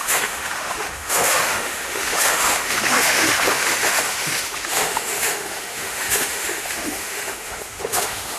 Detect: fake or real fake